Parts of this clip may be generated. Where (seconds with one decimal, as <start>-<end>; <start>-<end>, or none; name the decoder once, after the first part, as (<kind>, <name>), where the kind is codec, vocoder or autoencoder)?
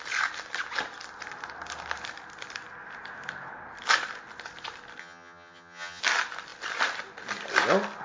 5.0-6.0 (vocoder, HiFi-GAN)